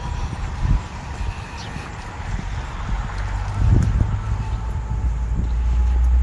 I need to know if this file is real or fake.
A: real